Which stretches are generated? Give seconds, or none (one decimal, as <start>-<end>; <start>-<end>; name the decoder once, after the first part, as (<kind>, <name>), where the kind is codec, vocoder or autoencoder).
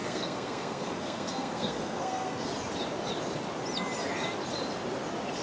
0.0-2.5 (codec, SNAC)